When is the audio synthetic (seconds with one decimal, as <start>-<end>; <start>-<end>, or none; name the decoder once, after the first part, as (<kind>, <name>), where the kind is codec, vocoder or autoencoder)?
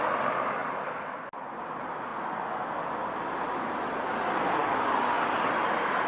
none